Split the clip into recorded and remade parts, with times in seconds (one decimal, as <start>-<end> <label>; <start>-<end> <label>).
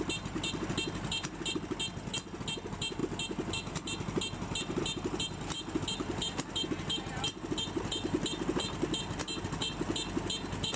0.0-10.8 recorded